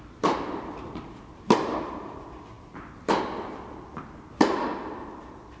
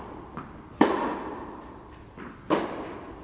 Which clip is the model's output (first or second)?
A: second